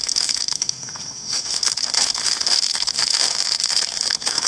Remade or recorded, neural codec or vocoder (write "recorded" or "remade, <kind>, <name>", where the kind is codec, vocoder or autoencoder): remade, autoencoder, DAC-VAE